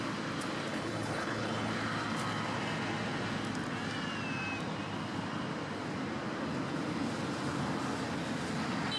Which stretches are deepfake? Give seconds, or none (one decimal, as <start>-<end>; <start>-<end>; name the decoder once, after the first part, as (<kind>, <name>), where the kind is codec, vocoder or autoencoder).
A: 0.7-1.7 (codec, HILCodec)